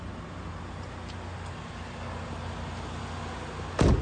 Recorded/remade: recorded